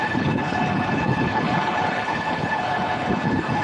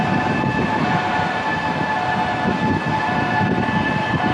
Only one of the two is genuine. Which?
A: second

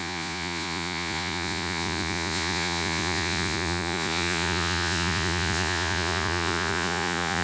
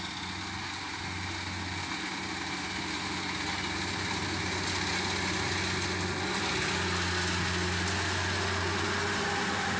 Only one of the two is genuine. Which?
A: second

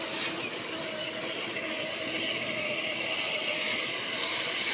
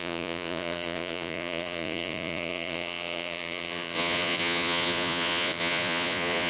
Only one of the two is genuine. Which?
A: first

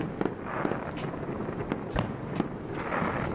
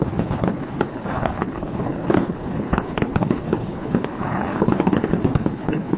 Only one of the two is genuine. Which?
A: first